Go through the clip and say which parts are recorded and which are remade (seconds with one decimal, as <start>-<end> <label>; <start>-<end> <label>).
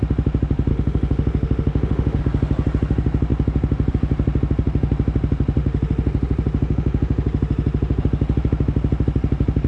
0.0-0.7 recorded; 0.7-2.2 remade; 2.2-5.6 recorded; 5.6-8.0 remade; 8.0-9.7 recorded